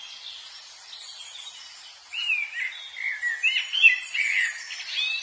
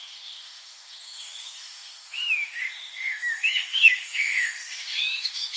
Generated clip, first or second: second